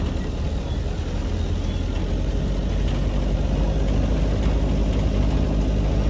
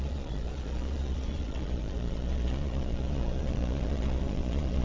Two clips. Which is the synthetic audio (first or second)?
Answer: second